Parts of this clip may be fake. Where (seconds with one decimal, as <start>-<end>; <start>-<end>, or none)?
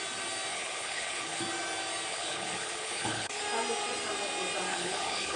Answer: 0.5-1.4; 2.1-3.4; 4.7-5.4